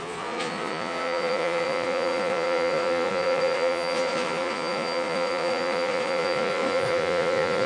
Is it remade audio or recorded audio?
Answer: remade